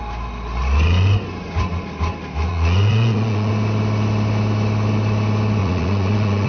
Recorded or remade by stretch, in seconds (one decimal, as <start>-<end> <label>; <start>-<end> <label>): 0.0-2.5 recorded; 2.5-3.5 remade; 3.5-5.6 recorded; 5.6-6.5 remade